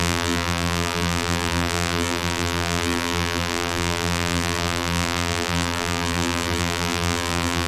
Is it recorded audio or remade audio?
remade